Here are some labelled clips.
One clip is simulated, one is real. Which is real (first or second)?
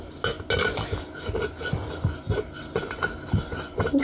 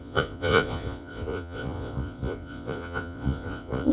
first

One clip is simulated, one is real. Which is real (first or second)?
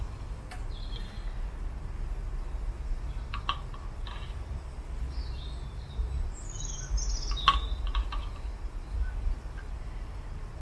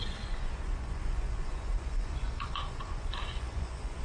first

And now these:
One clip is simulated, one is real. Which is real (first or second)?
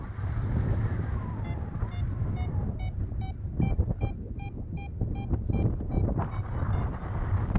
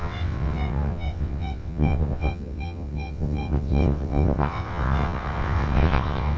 first